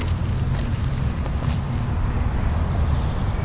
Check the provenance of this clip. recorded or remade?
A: recorded